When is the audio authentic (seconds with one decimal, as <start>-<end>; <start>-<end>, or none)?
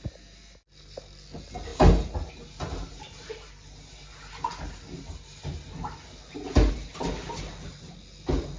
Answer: 0.0-8.6